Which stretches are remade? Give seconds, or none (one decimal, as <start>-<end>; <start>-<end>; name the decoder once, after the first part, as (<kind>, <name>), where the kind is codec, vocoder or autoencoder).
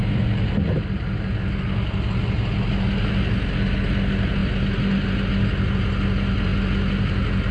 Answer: none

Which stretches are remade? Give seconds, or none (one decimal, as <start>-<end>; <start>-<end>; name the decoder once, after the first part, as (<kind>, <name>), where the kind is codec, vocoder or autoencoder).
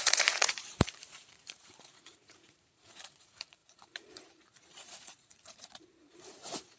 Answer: 0.0-6.8 (vocoder, Vocos)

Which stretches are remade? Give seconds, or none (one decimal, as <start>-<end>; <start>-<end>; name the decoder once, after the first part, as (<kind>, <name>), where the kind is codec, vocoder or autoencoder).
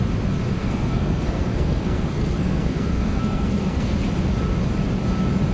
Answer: 0.6-3.9 (codec, SNAC)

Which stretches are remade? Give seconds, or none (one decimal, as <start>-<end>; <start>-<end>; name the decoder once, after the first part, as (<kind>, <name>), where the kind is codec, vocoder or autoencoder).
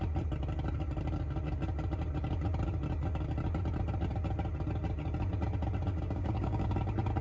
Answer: 5.9-6.7 (codec, DAC)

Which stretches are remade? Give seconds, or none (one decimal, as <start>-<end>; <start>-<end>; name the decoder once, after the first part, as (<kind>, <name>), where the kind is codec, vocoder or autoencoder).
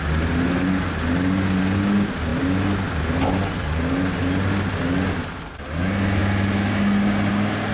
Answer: none